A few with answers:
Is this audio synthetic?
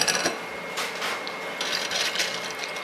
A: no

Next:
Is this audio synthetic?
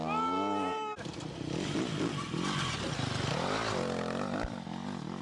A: no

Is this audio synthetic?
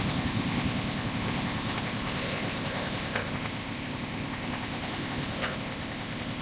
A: yes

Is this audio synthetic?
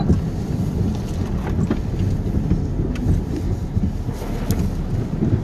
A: no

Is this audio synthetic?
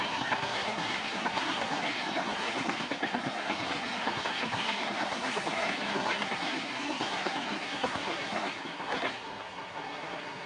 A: yes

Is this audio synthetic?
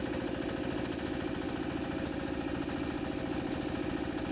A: no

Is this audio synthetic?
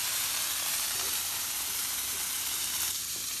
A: yes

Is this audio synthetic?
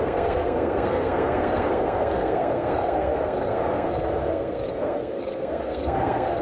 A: yes